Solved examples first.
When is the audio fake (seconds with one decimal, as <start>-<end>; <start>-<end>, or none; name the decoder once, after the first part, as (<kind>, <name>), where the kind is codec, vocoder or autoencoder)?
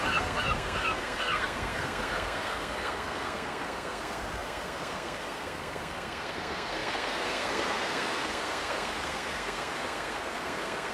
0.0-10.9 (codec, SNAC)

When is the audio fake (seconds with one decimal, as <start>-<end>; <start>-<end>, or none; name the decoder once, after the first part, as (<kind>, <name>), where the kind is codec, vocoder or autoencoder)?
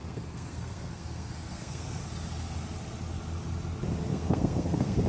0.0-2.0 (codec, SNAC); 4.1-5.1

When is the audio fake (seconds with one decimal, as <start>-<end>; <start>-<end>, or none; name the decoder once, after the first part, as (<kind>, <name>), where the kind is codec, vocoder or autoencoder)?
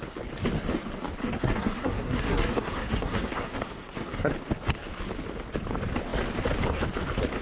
1.2-4.3 (codec, SNAC)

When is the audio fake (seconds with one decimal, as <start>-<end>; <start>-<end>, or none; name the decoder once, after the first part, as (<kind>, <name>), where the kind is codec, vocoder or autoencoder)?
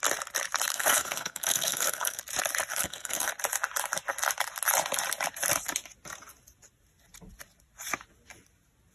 0.7-2.2 (codec, SNAC); 2.7-3.3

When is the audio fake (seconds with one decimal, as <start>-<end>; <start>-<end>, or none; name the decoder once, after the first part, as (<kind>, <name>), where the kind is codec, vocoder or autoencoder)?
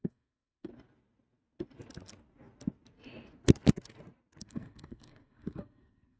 0.0-0.7 (codec, SNAC); 4.4-6.2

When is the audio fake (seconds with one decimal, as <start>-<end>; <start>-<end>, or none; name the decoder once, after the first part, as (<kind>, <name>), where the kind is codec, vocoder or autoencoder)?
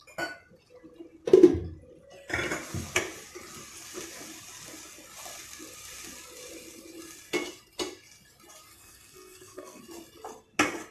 8.7-9.8 (codec, SNAC)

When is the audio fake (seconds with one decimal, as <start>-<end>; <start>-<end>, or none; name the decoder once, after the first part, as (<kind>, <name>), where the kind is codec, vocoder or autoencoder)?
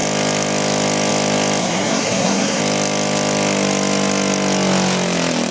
1.6-2.6 (codec, SNAC)